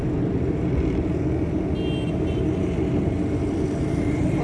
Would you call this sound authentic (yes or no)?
yes